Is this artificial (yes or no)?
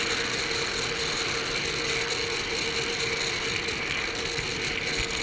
no